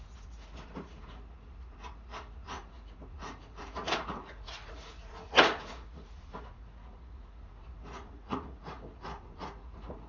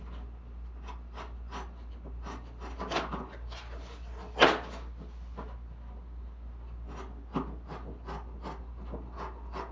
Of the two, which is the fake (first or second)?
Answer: first